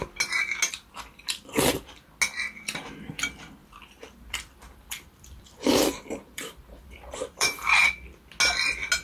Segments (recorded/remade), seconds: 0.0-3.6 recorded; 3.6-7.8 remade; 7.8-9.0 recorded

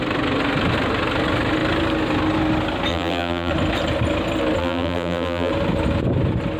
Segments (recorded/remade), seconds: 0.0-2.9 recorded; 2.9-3.5 remade; 3.5-4.6 recorded; 4.6-5.5 remade; 5.5-6.6 recorded